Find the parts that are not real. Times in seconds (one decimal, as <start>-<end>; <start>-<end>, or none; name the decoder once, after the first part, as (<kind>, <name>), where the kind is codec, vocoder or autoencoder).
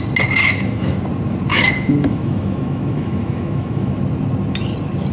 0.4-1.0 (autoencoder, DAC-VAE); 1.5-4.0